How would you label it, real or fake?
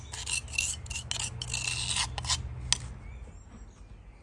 real